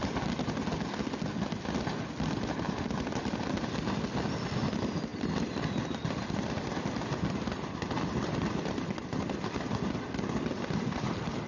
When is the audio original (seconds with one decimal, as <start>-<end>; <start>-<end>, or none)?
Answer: 0.0-11.5